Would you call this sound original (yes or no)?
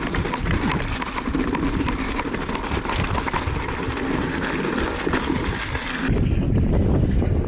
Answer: yes